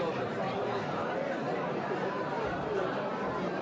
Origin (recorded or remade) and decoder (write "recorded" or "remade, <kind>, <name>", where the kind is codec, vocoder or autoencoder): remade, vocoder, BigVGAN v2